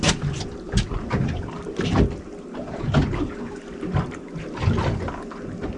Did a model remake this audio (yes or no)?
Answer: no